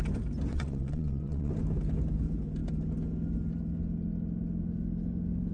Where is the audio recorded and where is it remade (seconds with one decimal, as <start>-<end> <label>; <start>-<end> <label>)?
0.0-0.5 recorded; 0.5-1.5 remade; 1.5-5.5 recorded